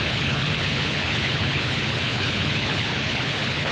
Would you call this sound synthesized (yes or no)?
yes